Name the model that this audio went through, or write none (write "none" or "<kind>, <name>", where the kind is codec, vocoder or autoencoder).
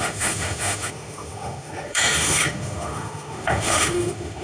autoencoder, DAC-VAE